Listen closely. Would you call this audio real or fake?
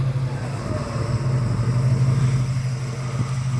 real